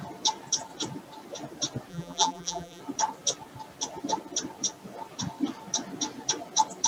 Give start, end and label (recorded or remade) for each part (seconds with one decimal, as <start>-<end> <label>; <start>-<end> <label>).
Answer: 0.0-1.9 recorded; 1.9-2.8 remade; 2.8-6.9 recorded